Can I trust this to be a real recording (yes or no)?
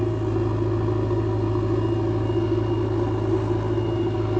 yes